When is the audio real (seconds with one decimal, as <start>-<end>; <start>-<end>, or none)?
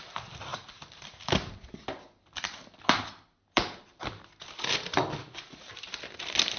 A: 0.0-0.5; 1.0-3.4; 4.0-6.6